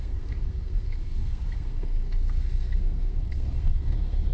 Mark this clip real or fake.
fake